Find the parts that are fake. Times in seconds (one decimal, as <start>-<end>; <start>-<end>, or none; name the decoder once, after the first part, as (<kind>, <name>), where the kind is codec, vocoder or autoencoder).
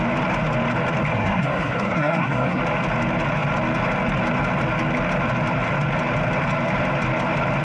1.1-2.6 (codec, SNAC)